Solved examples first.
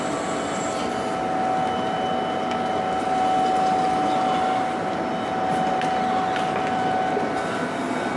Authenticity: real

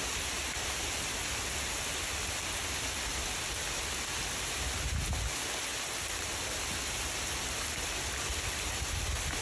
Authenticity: real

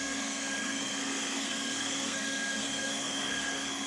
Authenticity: fake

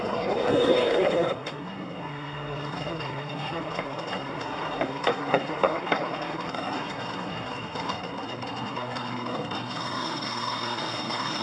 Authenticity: fake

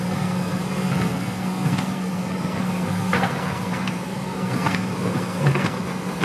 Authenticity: fake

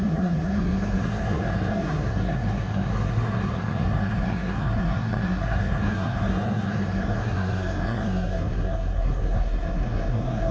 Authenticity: fake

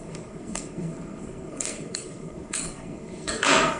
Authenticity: fake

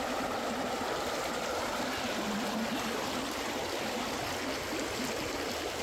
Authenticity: real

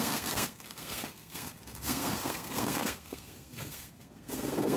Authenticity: fake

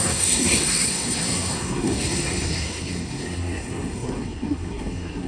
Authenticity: fake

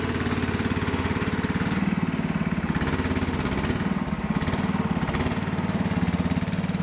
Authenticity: real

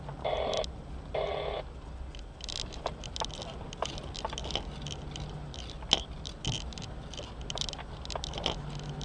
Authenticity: real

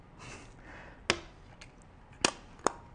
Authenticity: real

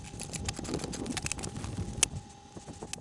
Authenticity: real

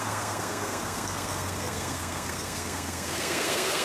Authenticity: fake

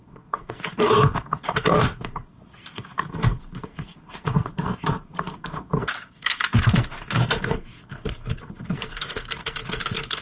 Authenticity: fake